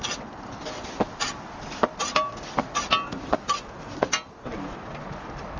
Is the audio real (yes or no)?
yes